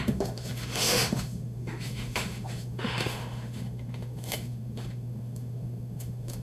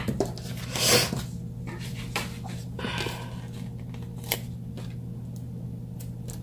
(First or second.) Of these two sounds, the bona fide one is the second